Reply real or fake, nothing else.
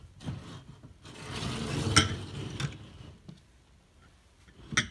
real